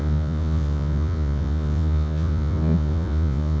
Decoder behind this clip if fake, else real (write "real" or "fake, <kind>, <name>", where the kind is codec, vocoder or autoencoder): fake, vocoder, Vocos